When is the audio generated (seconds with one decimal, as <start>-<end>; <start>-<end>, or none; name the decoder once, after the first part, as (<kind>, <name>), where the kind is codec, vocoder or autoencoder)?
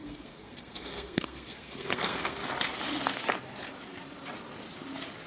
0.0-2.4 (codec, SNAC)